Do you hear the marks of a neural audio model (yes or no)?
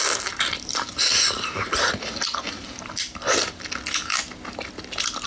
no